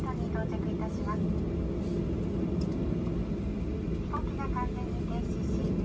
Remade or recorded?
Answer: recorded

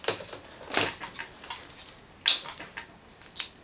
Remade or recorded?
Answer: recorded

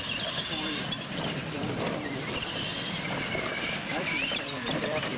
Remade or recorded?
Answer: remade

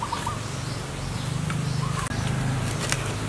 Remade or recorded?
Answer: recorded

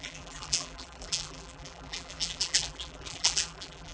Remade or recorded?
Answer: remade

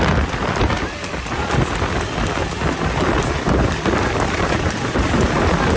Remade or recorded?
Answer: recorded